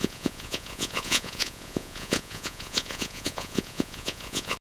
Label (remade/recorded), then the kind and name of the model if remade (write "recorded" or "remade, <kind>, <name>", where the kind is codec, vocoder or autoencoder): remade, vocoder, Vocos